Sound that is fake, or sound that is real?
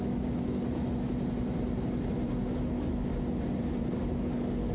real